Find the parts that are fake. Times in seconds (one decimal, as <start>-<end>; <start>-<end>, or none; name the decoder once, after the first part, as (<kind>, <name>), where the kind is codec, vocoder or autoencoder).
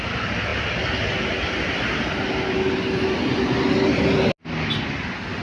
none